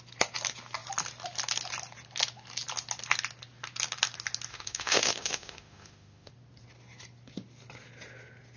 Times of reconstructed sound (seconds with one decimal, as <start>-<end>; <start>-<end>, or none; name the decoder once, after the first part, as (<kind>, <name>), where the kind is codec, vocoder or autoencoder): 4.5-6.3 (autoencoder, DAC-VAE)

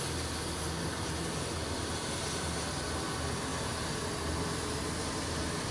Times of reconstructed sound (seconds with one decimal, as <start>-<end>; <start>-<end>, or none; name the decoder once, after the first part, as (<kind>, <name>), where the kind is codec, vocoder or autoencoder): none

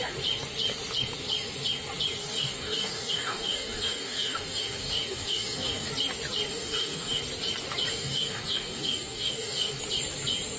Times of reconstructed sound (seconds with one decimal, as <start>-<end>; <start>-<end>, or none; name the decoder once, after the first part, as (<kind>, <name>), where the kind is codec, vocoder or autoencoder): 2.2-5.9 (codec, DAC); 6.5-7.2; 7.9-9.8

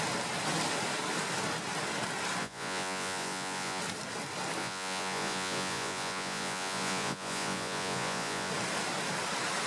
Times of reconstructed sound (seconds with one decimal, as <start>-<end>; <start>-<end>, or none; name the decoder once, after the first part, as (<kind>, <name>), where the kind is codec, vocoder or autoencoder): 2.4-3.8 (vocoder, Vocos); 4.6-8.5

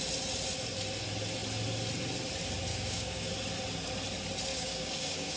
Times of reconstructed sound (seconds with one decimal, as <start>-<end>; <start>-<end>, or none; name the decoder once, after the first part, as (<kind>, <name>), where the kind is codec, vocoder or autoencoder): 2.7-3.3 (codec, DAC); 4.5-5.4

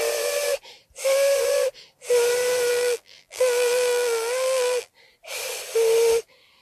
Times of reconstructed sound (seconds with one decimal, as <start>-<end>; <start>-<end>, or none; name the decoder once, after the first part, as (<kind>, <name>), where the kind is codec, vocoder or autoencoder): 2.7-4.9 (vocoder, BigVGAN v2)

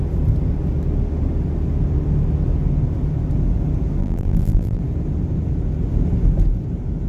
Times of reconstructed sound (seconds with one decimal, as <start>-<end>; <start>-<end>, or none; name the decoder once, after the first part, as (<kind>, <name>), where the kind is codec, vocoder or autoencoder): 4.0-4.8 (vocoder, BigVGAN v2)